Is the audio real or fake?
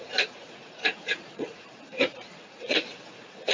fake